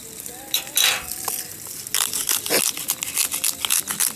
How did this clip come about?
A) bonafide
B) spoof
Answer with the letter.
A